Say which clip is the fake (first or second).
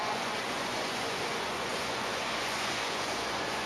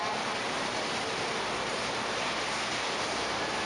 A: first